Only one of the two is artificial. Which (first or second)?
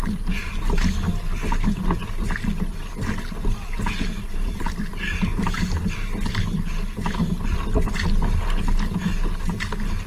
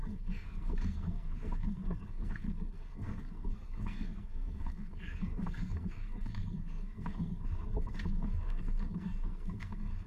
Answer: second